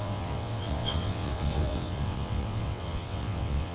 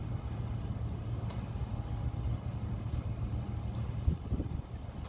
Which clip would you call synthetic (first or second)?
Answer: first